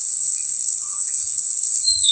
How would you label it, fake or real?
fake